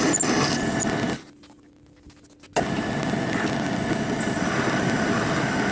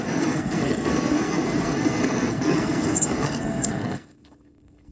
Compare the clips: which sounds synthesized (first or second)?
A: second